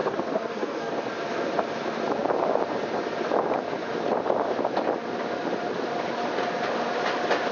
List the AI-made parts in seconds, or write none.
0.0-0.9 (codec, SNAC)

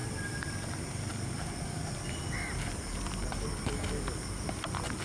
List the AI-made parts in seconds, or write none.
none

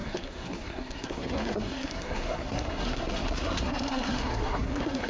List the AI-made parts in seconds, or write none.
0.0-5.1 (codec, SNAC)